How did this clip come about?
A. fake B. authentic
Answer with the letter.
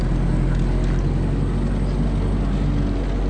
B